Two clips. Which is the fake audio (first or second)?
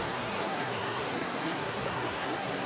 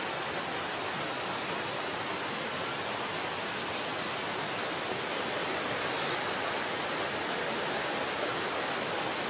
first